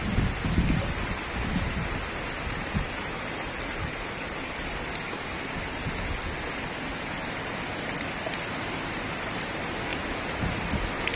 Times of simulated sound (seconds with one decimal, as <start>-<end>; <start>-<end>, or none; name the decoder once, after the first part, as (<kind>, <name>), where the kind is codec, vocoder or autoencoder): none